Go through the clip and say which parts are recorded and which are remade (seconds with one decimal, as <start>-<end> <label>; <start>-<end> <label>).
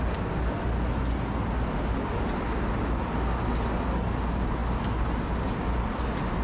0.0-6.4 recorded